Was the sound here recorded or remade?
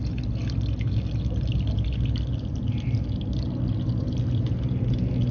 recorded